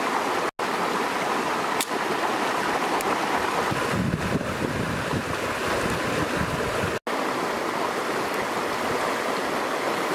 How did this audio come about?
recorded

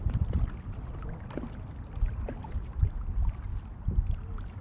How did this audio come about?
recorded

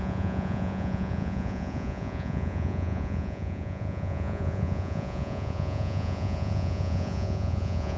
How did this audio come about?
remade